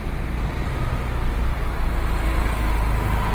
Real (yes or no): yes